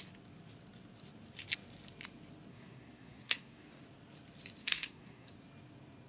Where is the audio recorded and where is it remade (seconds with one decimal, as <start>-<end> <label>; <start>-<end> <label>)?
0.0-2.5 recorded; 2.5-3.8 remade; 3.8-4.6 recorded; 4.6-5.3 remade; 5.3-6.1 recorded